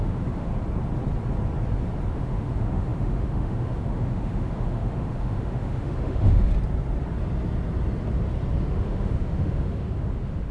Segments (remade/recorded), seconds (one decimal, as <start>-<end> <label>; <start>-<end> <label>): 0.0-0.5 remade; 0.5-2.1 recorded; 2.1-6.5 remade; 6.5-8.6 recorded; 8.6-10.5 remade